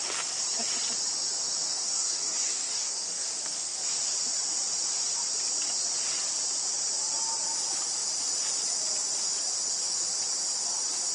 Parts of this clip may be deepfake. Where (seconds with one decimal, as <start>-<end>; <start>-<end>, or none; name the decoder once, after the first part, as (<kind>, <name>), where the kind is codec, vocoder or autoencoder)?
1.7-3.3 (codec, DAC)

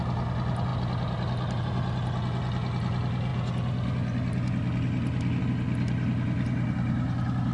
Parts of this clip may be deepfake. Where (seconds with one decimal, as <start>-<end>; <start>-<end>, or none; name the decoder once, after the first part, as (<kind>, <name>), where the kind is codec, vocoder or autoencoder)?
none

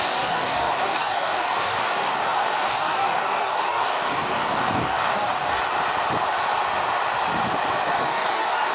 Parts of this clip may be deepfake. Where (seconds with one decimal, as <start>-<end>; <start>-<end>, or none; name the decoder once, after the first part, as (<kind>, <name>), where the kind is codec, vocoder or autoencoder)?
0.0-5.6 (codec, DAC); 8.0-8.7

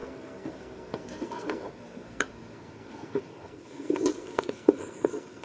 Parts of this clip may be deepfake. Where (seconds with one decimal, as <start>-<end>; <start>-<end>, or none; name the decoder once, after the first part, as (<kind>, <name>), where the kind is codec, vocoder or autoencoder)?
0.0-5.4 (codec, SNAC)

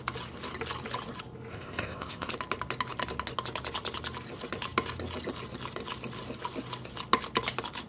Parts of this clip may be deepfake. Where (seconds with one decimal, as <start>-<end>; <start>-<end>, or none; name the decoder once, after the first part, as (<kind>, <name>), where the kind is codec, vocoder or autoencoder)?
1.5-2.3 (codec, ZipCodec)

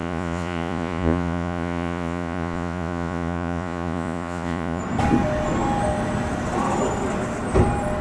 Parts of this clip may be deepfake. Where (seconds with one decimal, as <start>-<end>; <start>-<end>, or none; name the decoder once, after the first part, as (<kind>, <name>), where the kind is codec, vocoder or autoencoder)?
0.0-4.8 (vocoder, Vocos)